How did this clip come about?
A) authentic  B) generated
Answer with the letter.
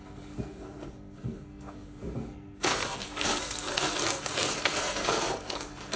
B